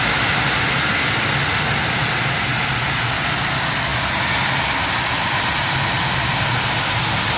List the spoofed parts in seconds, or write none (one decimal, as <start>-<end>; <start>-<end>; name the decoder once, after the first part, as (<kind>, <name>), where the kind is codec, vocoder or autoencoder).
none